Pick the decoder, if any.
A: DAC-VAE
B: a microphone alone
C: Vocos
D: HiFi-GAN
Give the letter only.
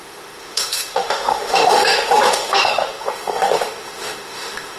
A